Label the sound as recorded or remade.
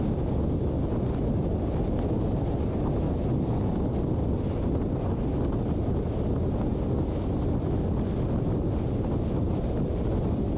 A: recorded